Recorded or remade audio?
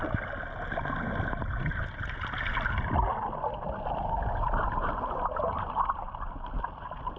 recorded